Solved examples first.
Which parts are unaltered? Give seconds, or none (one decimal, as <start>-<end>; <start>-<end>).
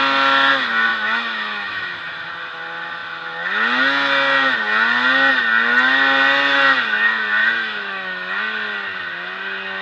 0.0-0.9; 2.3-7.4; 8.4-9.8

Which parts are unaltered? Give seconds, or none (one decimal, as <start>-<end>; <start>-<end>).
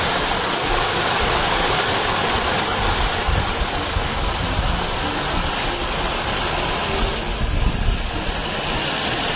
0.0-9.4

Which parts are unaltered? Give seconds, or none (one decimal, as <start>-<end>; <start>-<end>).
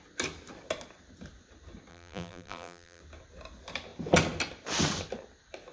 0.0-1.9; 3.0-5.7